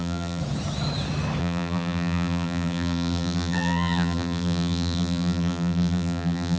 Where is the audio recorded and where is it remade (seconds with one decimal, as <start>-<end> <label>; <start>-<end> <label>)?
0.0-0.4 remade; 0.4-1.4 recorded; 1.4-6.6 remade